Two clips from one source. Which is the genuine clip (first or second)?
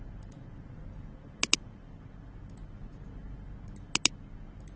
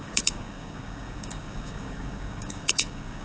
first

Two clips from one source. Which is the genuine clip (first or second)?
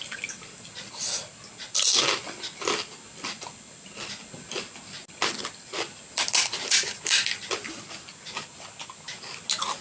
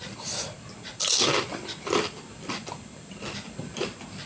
first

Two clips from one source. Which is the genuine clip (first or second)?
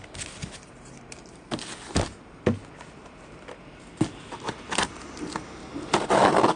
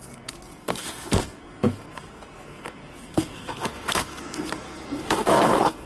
first